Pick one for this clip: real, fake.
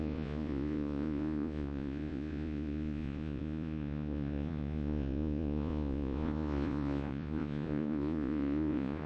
fake